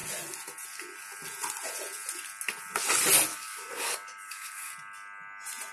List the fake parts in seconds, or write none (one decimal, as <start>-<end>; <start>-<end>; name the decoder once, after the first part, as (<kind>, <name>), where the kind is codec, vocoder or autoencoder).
3.3-4.7 (codec, DAC)

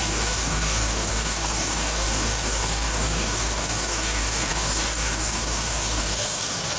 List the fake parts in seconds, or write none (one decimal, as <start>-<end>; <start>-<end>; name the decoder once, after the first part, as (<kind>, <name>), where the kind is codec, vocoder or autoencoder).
0.0-6.8 (codec, DAC)

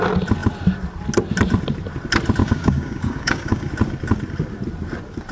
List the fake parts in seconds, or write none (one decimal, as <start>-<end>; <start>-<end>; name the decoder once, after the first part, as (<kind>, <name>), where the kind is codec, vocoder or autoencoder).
2.4-3.7 (codec, DAC)

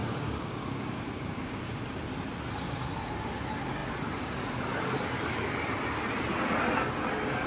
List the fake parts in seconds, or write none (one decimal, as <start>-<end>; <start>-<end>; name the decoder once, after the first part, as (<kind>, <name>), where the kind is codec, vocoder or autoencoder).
0.0-1.6 (codec, DAC)

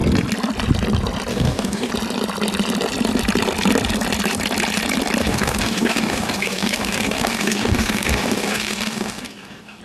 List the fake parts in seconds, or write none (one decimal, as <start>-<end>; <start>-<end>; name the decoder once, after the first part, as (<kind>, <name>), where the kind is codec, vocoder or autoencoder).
1.3-1.9 (codec, DAC); 5.2-9.8

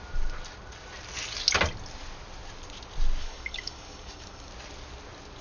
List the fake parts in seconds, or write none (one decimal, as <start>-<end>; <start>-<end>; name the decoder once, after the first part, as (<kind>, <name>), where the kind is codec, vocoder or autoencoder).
3.2-4.5 (codec, DAC)